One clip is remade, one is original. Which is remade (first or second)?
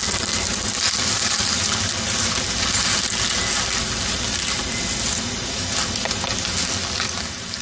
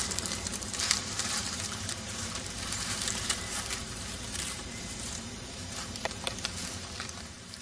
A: second